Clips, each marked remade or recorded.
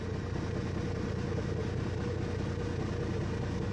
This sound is recorded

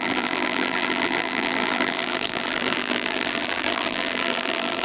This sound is remade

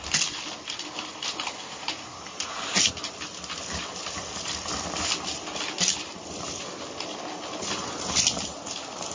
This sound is remade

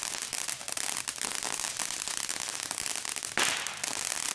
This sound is recorded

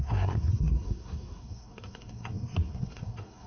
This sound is remade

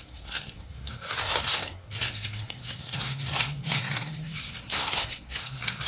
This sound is remade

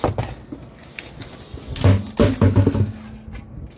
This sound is recorded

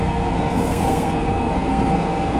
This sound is remade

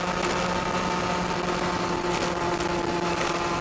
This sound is recorded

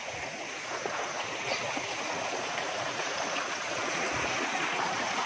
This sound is remade